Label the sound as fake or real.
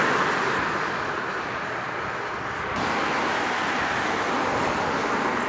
real